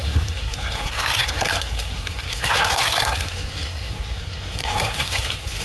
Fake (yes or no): yes